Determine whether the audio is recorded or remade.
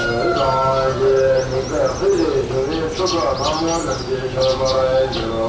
recorded